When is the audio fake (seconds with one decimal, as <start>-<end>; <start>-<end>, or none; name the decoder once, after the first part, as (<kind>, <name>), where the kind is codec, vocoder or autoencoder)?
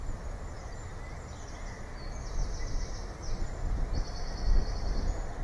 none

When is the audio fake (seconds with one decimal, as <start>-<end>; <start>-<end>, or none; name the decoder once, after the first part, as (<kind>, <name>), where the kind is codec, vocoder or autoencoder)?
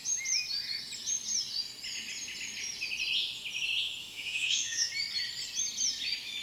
4.0-4.9 (autoencoder, DAC-VAE)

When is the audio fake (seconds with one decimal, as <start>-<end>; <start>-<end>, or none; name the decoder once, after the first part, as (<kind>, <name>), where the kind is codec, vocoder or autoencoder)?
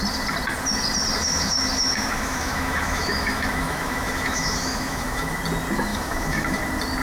1.2-5.4 (autoencoder, DAC-VAE); 5.9-6.6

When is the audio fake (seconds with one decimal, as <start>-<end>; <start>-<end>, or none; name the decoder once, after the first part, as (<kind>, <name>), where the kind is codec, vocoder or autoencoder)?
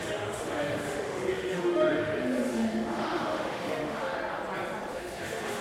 0.0-4.2 (autoencoder, DAC-VAE); 4.9-5.6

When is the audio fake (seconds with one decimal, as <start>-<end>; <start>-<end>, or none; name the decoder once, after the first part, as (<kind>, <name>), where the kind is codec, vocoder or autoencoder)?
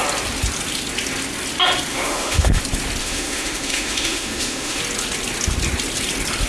1.9-2.6 (autoencoder, DAC-VAE); 3.0-4.8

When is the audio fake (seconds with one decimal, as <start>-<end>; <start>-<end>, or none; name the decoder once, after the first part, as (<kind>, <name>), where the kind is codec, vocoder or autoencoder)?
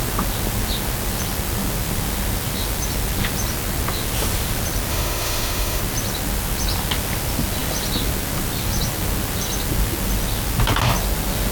4.9-5.8 (autoencoder, DAC-VAE)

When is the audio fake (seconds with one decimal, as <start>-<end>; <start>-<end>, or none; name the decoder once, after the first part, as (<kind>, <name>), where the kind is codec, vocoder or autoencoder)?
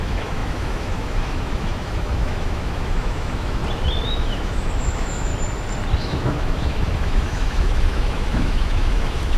0.0-3.6 (autoencoder, DAC-VAE); 4.1-5.3; 6.0-9.4